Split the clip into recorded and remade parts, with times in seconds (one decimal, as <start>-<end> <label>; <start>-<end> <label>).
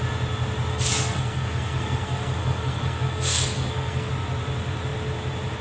0.0-0.7 recorded; 0.7-4.1 remade; 4.1-5.6 recorded